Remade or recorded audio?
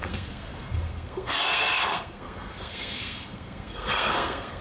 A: remade